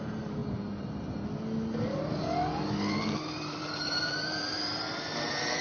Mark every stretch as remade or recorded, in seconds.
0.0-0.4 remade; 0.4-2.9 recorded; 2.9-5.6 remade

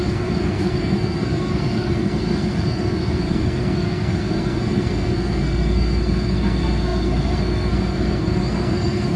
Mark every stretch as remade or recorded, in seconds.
0.0-9.2 remade

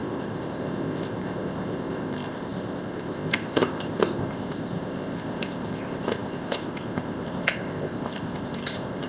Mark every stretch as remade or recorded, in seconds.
0.0-9.1 remade

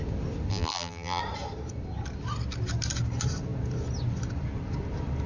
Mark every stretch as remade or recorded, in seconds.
0.0-0.5 recorded; 0.5-1.2 remade; 1.2-5.3 recorded

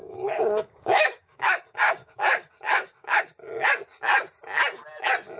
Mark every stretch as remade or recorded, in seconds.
0.0-3.2 remade; 3.2-5.4 recorded

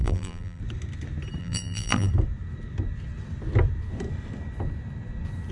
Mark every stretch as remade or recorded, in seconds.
0.0-0.6 remade; 0.6-1.4 recorded; 1.4-2.1 remade; 2.1-5.5 recorded

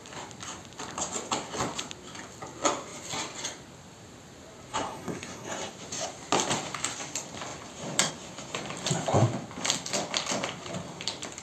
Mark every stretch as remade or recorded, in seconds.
0.0-4.7 recorded; 4.7-5.7 remade; 5.7-11.4 recorded